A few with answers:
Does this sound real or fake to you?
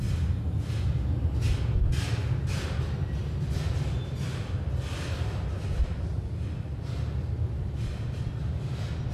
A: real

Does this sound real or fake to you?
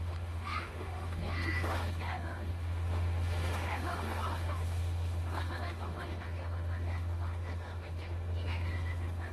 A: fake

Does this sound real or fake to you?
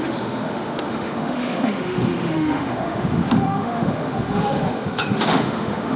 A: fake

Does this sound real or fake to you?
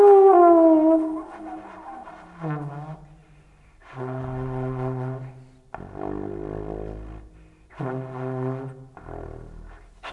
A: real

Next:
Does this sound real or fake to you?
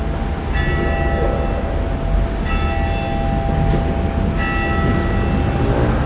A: real